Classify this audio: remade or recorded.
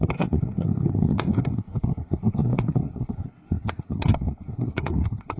remade